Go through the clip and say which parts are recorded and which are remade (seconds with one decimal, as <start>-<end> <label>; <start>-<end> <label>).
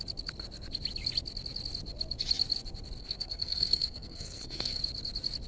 0.0-3.0 recorded; 3.0-4.8 remade; 4.8-5.5 recorded